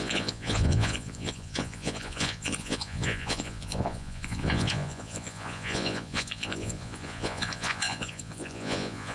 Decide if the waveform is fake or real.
fake